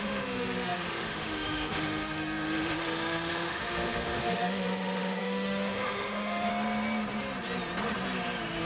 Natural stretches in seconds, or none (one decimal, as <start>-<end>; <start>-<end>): 6.5-8.6